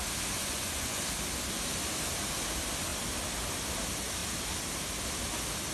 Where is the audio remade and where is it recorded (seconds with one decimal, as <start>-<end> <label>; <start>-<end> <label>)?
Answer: 0.0-0.4 recorded; 0.4-1.0 remade; 1.0-5.7 recorded